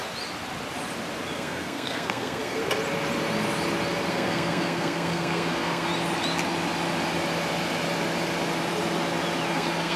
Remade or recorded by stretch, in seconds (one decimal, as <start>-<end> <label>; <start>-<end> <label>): 0.0-1.3 recorded; 1.3-2.6 remade; 2.6-4.1 recorded; 4.1-5.9 remade; 5.9-9.5 recorded; 9.5-10.0 remade